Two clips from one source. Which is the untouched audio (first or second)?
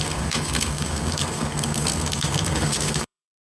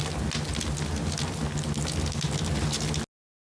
second